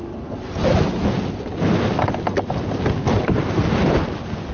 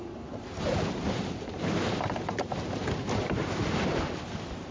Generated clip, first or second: second